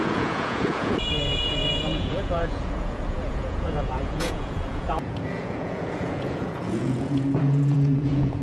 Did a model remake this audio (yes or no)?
yes